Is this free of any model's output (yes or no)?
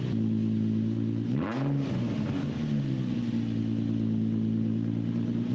yes